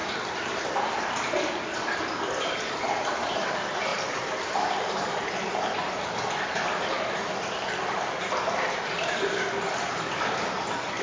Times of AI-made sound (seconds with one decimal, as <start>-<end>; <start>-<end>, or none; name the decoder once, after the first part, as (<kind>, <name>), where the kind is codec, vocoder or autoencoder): 0.0-11.0 (vocoder, BigVGAN v2)